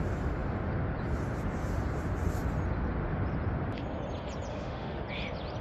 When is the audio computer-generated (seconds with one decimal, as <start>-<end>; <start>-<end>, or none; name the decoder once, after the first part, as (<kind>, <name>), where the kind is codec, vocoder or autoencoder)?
4.5-5.0 (autoencoder, DAC-VAE)